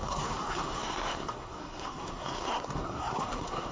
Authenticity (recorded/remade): remade